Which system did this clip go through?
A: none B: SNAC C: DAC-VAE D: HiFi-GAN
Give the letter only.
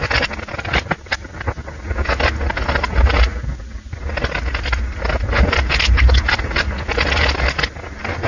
A